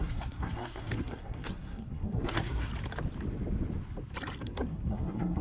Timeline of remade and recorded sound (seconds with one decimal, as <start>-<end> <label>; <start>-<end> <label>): 0.0-2.7 remade; 2.7-4.4 recorded; 4.4-5.4 remade